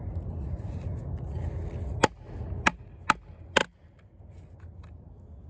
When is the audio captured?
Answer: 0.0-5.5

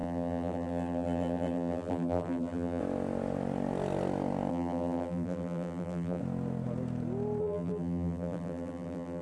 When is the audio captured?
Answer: 2.8-4.5; 6.2-7.4

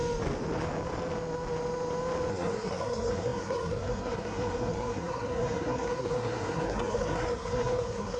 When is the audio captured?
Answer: 0.0-2.3

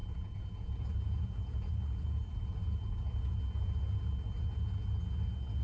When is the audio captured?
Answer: 3.4-5.6